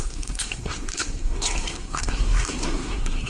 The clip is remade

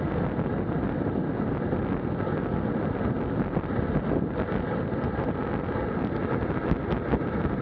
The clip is recorded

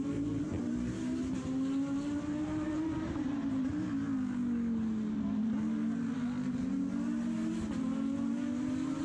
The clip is recorded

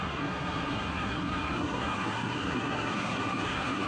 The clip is remade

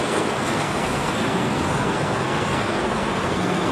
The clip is remade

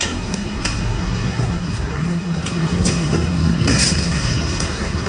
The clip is remade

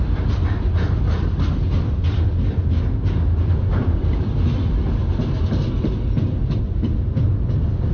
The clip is recorded